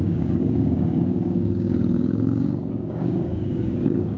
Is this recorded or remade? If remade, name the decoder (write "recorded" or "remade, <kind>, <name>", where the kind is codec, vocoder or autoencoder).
remade, codec, DAC